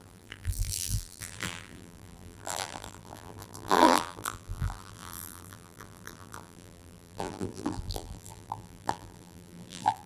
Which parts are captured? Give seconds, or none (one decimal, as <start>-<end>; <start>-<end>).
none